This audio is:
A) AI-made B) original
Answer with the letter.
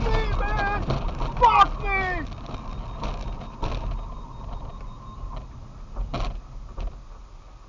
B